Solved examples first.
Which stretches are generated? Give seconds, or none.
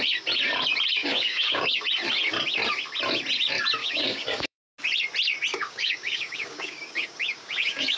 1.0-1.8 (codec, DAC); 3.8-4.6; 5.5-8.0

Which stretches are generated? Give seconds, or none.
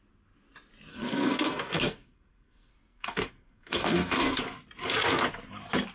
0.9-4.4 (codec, SNAC)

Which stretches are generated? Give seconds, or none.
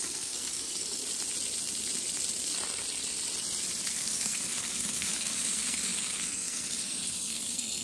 0.0-1.0 (codec, SNAC); 3.9-7.8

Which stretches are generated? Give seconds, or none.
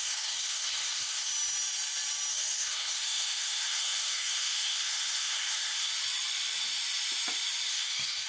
0.0-1.3 (codec, SNAC); 2.3-5.9; 7.7-8.3